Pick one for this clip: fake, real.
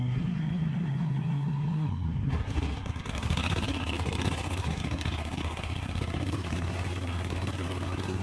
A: fake